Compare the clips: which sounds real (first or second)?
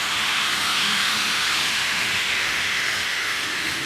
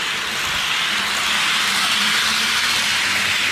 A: second